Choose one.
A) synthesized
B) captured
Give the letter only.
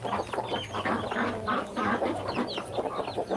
B